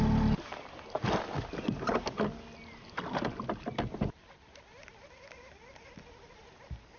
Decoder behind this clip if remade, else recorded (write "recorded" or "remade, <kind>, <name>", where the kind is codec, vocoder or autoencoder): recorded